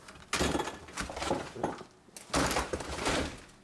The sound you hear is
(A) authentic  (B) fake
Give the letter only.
A